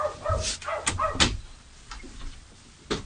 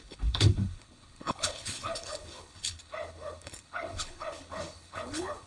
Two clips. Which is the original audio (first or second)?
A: first